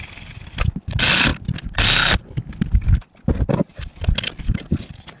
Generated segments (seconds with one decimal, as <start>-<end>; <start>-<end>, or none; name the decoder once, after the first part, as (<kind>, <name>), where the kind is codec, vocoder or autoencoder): none